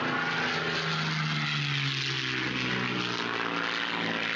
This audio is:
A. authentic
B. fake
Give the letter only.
A